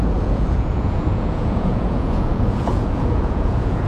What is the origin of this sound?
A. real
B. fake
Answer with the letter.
B